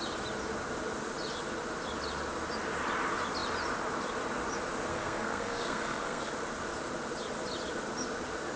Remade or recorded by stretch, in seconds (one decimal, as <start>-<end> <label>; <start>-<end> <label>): 0.0-4.9 recorded; 4.9-6.3 remade; 6.3-8.6 recorded